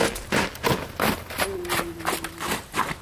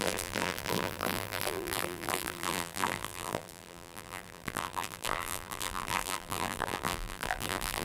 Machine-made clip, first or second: second